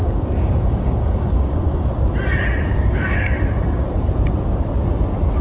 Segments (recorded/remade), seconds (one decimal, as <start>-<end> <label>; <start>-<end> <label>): 0.0-1.9 remade; 1.9-2.7 recorded; 2.7-3.3 remade; 3.3-5.4 recorded

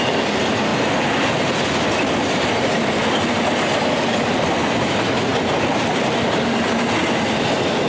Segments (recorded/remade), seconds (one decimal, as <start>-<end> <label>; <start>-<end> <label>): 0.0-7.9 recorded